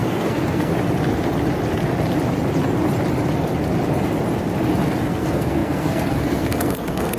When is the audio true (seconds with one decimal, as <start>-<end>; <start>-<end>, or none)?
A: 0.7-5.0